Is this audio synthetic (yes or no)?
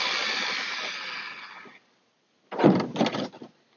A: no